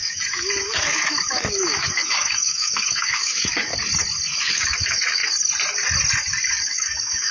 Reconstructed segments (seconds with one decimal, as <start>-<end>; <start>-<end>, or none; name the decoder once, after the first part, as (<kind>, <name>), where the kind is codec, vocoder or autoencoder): 0.0-3.7 (autoencoder, DAC-VAE); 4.4-5.2; 6.7-7.3